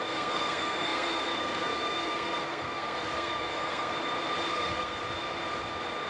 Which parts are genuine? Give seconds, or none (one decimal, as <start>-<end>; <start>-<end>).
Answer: 3.9-4.5; 5.0-6.1